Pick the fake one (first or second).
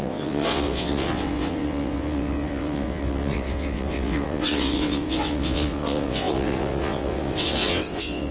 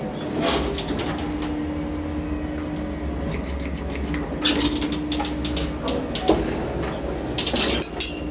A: first